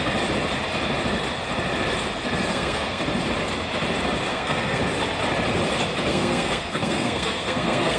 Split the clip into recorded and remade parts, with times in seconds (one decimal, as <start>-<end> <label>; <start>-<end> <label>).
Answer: 0.0-2.5 recorded; 2.5-3.0 remade; 3.0-4.3 recorded; 4.3-4.8 remade; 4.8-6.1 recorded; 6.1-8.0 remade